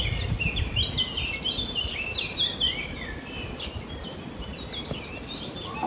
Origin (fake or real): real